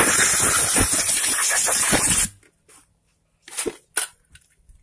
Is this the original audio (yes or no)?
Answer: yes